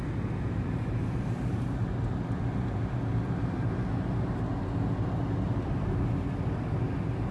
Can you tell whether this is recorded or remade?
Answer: recorded